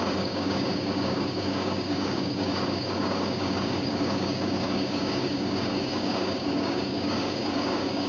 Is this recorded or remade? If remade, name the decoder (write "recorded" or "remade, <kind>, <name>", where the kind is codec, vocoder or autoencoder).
remade, codec, DAC